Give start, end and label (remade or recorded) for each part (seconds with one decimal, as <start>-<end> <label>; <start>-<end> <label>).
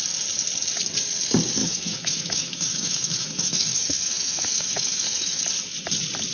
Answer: 0.0-1.6 recorded; 1.6-5.4 remade; 5.4-6.3 recorded